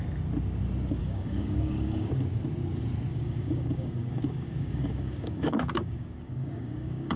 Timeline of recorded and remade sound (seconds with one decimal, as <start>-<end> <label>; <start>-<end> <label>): 0.0-1.0 recorded; 1.0-2.1 remade; 2.1-3.1 recorded; 3.1-7.2 remade